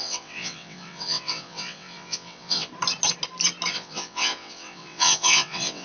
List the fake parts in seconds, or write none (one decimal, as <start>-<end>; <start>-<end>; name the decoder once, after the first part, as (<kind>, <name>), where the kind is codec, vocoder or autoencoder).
0.0-2.7 (vocoder, WaveNeXt); 3.7-5.8